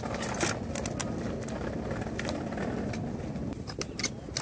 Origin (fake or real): real